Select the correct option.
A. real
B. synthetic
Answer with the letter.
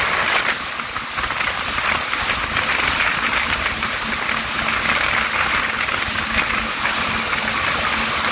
A